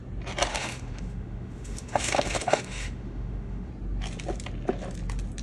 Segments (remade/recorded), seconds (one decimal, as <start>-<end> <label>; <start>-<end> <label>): 0.0-0.5 recorded; 0.5-3.7 remade; 3.7-5.4 recorded